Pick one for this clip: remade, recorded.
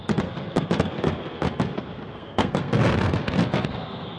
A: remade